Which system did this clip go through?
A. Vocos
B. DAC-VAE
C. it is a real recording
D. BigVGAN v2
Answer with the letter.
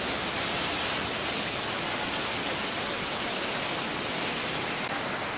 C